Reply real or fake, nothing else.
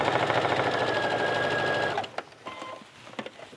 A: real